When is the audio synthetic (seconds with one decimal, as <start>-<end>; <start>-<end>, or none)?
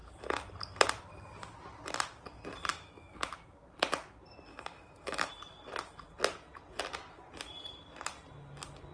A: 2.7-3.3; 4.5-5.3